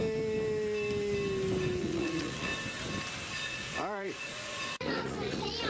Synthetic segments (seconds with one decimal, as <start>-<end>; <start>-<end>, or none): 1.8-2.5; 3.3-5.7